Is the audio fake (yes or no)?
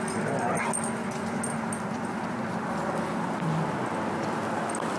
no